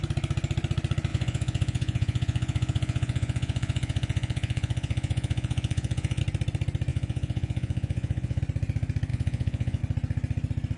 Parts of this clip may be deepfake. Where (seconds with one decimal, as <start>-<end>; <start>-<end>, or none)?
1.1-6.2; 6.9-8.4; 9.1-9.8